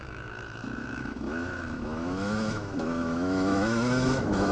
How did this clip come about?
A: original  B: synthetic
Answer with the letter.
B